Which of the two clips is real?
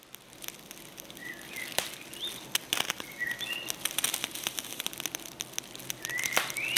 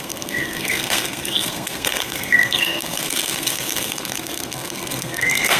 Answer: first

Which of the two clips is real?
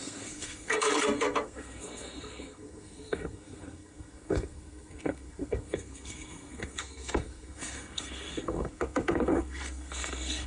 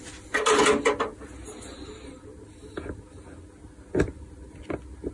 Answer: second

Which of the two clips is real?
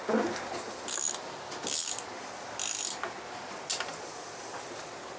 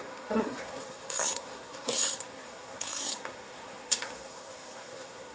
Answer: first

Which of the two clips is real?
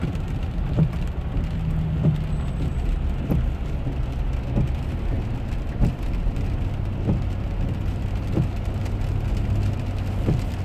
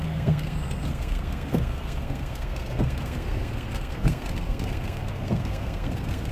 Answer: first